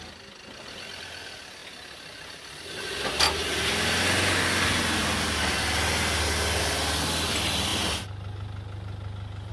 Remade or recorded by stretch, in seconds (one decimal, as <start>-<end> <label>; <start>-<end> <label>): 0.0-9.5 recorded